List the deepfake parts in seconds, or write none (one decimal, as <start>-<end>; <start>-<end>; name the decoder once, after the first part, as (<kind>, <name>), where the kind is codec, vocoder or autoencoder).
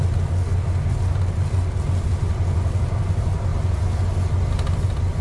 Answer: none